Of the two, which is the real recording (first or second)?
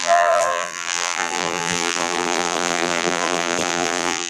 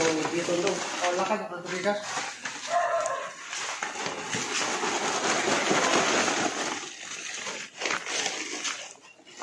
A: second